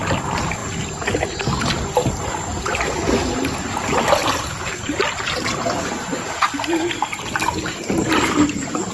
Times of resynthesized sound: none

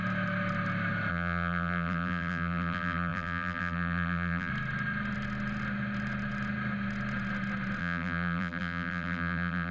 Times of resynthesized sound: 1.1-4.5; 7.8-9.7